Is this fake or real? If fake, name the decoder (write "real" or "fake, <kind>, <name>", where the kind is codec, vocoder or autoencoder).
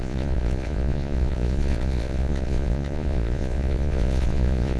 fake, vocoder, Vocos